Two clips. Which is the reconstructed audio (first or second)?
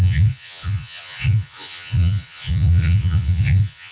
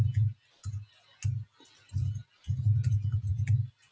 first